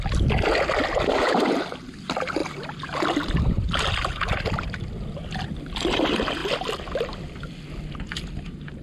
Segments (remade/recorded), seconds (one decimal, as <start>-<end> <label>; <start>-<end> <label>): 0.0-8.8 recorded